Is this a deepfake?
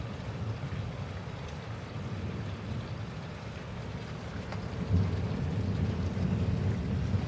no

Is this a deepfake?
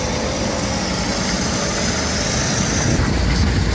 no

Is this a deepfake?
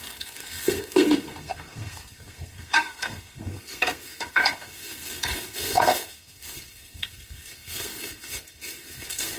yes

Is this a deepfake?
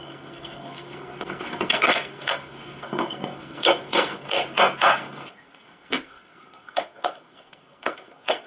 yes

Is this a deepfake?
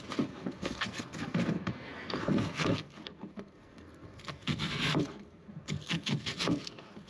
yes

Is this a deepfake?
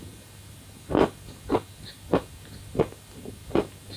no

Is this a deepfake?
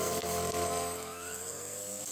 yes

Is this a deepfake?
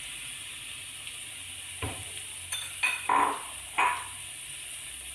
no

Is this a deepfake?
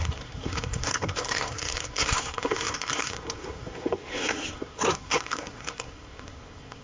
yes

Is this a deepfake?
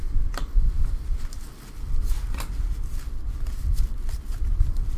no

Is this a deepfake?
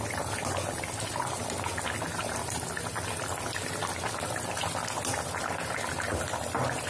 no